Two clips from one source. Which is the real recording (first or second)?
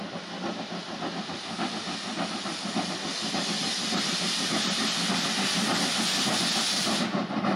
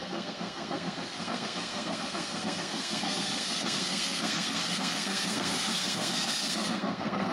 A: first